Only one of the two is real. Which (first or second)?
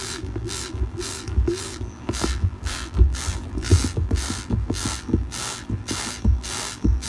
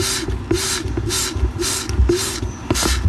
second